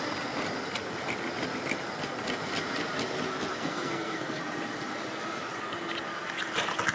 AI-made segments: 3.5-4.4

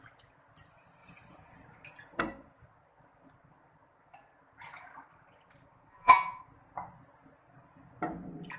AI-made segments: 5.9-6.4

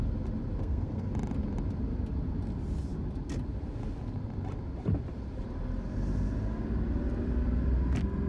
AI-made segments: 0.6-1.1

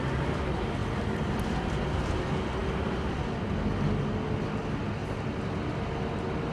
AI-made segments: none